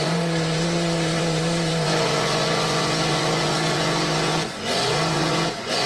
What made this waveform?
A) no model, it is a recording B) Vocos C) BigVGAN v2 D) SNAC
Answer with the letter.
B